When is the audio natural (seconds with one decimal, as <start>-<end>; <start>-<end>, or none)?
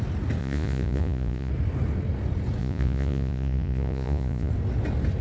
0.0-0.4; 1.5-2.6; 4.5-5.2